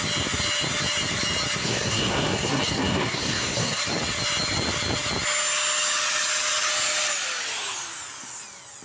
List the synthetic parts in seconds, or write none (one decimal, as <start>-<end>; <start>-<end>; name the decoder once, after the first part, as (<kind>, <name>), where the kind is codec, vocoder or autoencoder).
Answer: 1.6-3.8 (codec, SNAC)